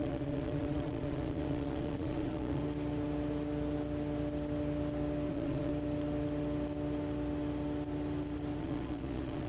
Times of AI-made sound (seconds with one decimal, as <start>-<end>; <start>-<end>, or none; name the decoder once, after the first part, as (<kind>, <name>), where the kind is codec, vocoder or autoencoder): 0.0-2.6 (vocoder, Vocos); 5.3-5.7; 8.6-9.5